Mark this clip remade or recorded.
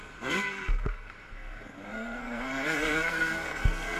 remade